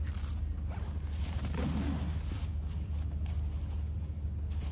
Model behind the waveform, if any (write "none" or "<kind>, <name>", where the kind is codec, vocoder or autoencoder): none